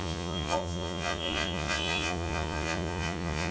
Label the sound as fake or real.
fake